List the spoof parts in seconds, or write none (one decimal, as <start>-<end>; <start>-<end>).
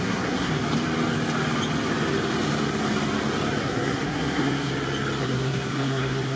0.0-0.5; 3.6-4.7; 5.2-6.4